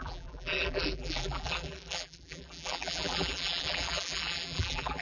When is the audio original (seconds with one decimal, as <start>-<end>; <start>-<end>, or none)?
none